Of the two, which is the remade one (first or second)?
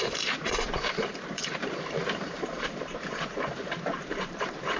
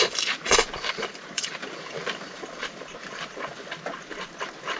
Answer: first